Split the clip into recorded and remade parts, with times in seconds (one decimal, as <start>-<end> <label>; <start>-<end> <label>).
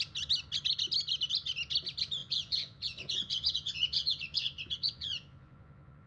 0.0-2.2 recorded; 2.2-6.1 remade